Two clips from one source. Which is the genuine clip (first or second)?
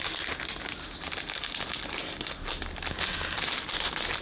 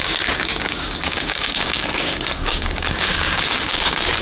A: first